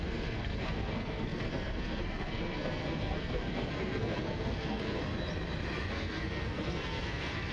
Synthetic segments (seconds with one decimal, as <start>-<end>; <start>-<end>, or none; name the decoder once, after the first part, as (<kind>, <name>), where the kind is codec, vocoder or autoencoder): 0.0-5.0 (codec, SNAC); 5.9-7.5